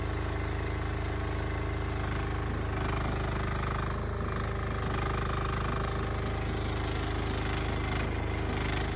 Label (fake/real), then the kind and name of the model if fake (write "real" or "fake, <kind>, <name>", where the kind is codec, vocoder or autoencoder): real